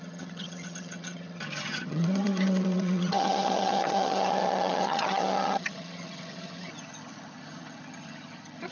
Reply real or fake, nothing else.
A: fake